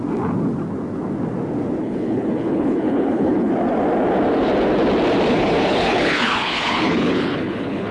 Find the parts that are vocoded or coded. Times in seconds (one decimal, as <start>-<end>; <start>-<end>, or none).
1.8-3.5; 5.3-7.9